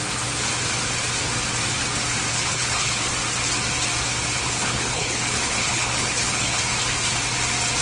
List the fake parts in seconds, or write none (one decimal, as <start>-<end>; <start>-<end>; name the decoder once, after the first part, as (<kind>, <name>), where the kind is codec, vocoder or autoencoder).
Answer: 2.3-3.1 (codec, HILCodec); 4.3-6.6